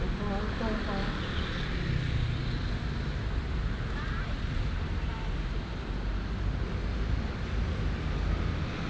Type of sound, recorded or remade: recorded